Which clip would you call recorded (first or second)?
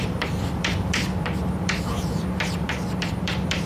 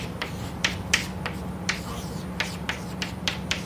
second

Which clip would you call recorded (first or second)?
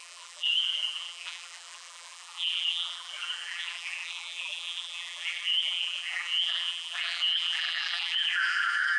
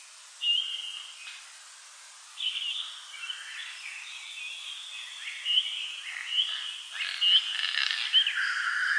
second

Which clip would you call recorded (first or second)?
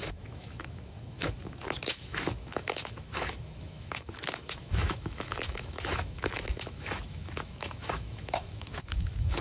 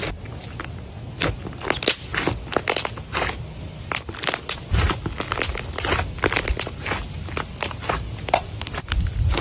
second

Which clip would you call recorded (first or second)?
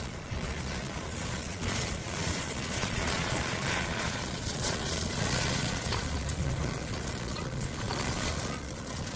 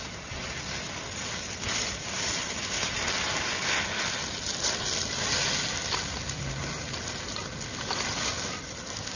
second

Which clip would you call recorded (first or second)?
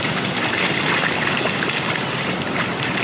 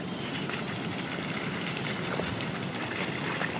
second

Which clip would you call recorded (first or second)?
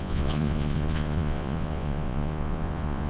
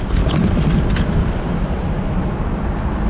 second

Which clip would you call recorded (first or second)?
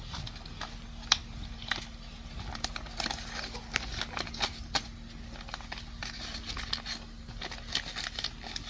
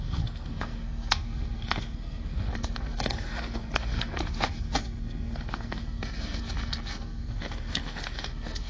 first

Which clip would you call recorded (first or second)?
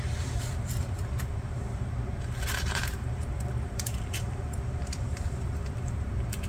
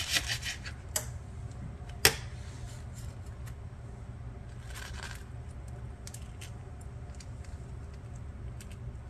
second